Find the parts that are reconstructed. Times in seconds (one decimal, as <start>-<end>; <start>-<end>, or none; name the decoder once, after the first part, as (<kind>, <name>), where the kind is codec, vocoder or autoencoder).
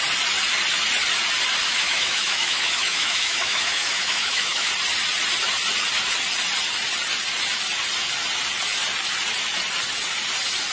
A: 1.6-4.7 (autoencoder, DAC-VAE)